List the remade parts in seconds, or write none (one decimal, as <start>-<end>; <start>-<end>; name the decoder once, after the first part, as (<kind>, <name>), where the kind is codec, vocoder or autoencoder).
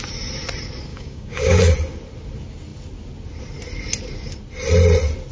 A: 0.9-1.6 (codec, DAC)